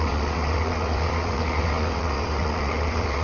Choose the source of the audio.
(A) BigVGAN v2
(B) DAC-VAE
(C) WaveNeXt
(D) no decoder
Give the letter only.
C